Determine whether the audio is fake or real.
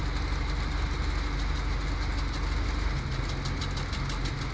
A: real